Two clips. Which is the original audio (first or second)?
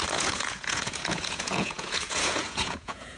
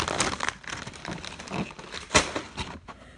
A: second